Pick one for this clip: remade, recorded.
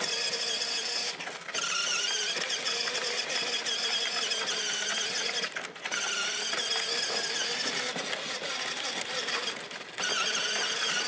recorded